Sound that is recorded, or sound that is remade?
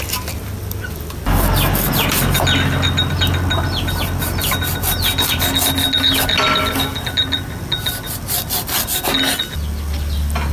recorded